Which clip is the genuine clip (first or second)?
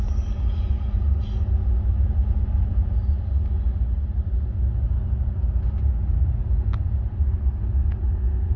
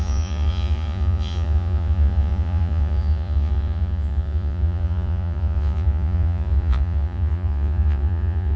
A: first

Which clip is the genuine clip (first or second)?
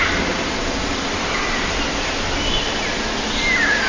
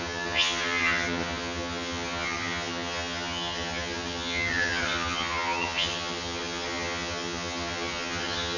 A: first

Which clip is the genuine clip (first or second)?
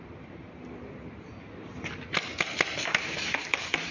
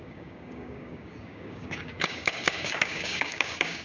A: first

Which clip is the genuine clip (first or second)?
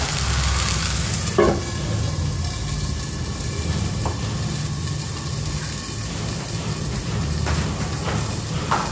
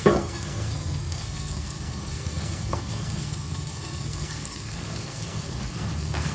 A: first